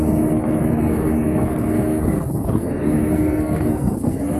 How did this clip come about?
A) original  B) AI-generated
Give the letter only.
B